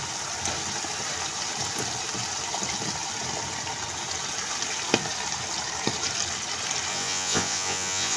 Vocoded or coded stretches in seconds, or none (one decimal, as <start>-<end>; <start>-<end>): 6.9-8.2